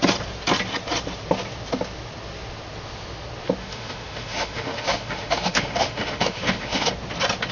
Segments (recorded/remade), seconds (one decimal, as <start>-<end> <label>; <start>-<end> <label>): 0.0-3.6 recorded; 3.6-6.9 remade; 6.9-7.5 recorded